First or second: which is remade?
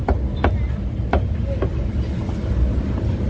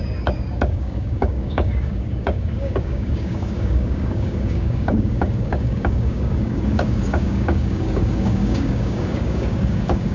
second